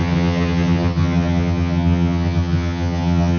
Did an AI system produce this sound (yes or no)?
yes